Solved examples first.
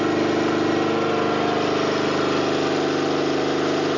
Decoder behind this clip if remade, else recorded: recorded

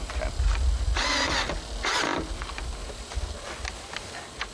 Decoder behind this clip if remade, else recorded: recorded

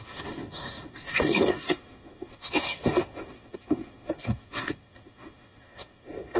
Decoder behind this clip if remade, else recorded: remade, autoencoder, DAC-VAE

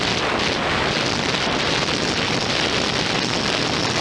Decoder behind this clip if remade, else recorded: recorded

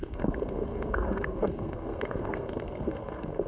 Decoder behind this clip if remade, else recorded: remade, codec, SNAC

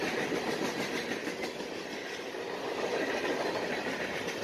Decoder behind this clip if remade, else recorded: recorded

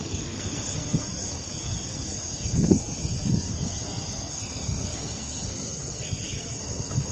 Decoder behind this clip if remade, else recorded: remade, codec, SNAC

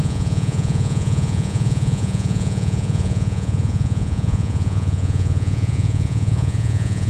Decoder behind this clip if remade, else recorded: remade, vocoder, Vocos